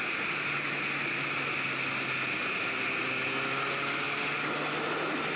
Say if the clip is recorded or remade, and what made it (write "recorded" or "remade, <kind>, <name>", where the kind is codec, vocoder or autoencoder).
recorded